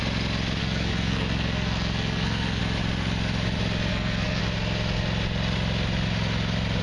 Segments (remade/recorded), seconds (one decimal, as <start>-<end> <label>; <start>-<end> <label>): 0.0-0.6 recorded; 0.6-2.6 remade; 2.6-3.9 recorded; 3.9-4.4 remade; 4.4-6.8 recorded